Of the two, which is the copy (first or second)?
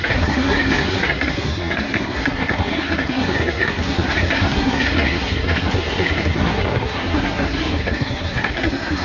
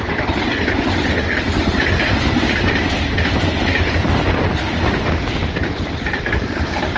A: first